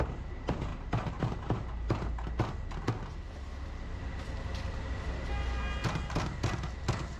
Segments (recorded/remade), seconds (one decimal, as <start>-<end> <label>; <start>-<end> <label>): 0.0-7.2 recorded